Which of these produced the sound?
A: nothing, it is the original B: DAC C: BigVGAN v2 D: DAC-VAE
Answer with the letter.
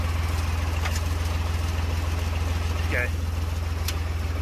A